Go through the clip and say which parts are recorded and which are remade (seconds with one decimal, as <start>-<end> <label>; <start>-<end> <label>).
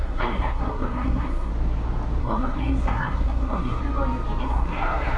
0.0-1.5 remade; 1.5-2.2 recorded; 2.2-3.8 remade; 3.8-4.4 recorded; 4.4-5.2 remade